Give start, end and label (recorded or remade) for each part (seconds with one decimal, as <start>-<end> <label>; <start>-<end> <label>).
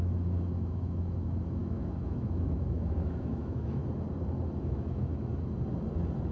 0.0-3.8 remade; 3.8-4.6 recorded; 4.6-5.1 remade; 5.1-6.3 recorded